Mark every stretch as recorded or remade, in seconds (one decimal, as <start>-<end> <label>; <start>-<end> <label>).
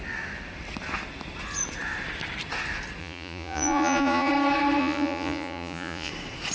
0.0-3.0 recorded; 3.0-4.3 remade; 4.3-4.8 recorded; 4.8-6.1 remade; 6.1-6.5 recorded